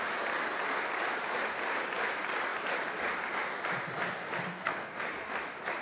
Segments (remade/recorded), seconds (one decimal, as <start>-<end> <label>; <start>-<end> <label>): 0.0-4.5 recorded; 4.5-5.0 remade; 5.0-5.8 recorded